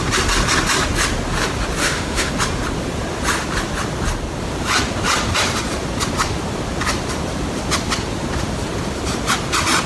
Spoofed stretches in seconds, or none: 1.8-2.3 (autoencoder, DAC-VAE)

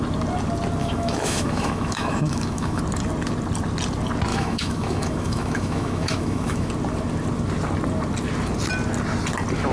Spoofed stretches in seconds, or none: 0.8-2.8 (autoencoder, DAC-VAE); 4.3-6.7

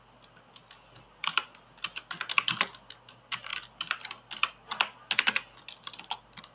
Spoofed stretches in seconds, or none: none

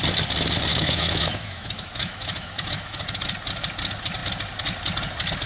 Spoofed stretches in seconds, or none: 0.7-3.0 (autoencoder, DAC-VAE)

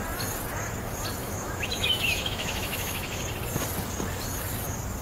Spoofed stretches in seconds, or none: 1.2-3.2 (autoencoder, DAC-VAE)

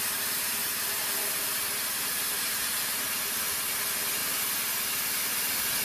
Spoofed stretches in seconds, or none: none

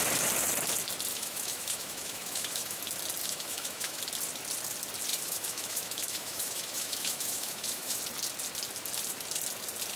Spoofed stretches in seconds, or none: 1.1-2.8 (autoencoder, DAC-VAE); 3.2-4.0; 5.1-8.0